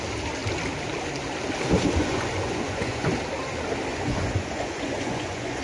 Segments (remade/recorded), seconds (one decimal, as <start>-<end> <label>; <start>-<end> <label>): 0.0-2.0 recorded; 2.0-3.1 remade; 3.1-3.9 recorded; 3.9-5.6 remade